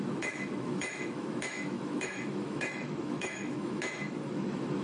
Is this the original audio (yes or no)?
no